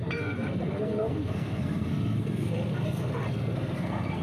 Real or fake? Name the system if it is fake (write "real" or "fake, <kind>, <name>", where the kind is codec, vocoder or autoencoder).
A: fake, codec, SNAC